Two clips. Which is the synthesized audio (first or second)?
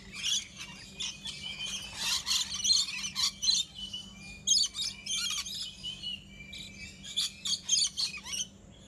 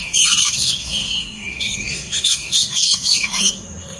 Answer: second